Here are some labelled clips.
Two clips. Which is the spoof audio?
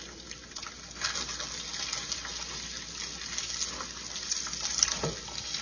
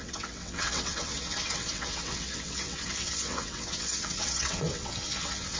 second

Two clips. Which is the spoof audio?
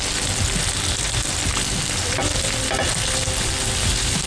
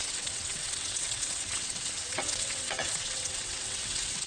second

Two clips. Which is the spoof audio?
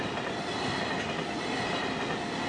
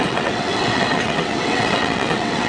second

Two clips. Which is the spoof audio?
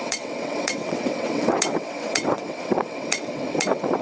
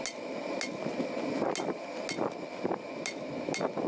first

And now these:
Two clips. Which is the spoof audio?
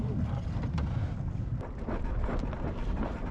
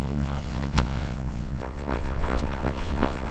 second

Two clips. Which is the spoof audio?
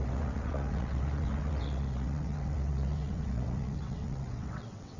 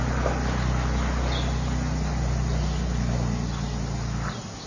first